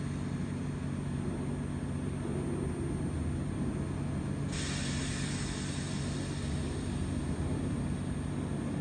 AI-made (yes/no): no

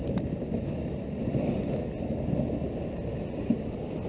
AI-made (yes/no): no